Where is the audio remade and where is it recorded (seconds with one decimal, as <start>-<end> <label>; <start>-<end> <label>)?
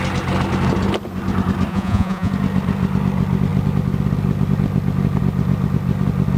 0.0-1.7 recorded; 1.7-2.3 remade; 2.3-6.4 recorded